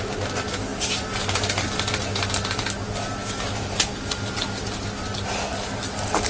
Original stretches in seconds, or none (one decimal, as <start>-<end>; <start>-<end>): 0.0-6.3